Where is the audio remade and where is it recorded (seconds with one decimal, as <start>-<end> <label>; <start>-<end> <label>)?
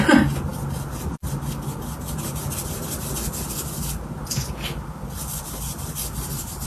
0.0-6.7 recorded